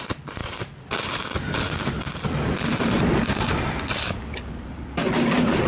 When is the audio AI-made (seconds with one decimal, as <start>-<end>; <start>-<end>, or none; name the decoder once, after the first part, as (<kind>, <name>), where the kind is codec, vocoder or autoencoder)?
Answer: none